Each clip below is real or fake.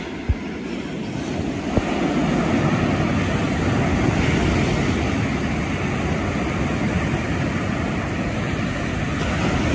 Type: real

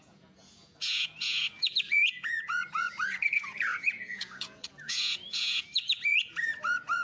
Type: fake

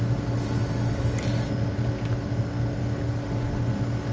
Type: real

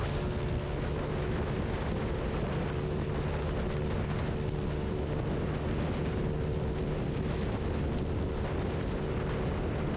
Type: real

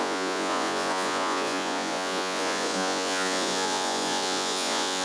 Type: fake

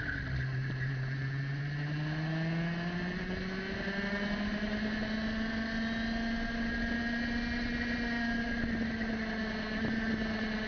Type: real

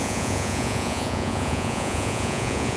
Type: fake